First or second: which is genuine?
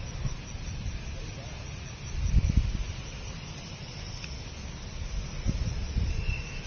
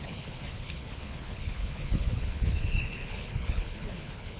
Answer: first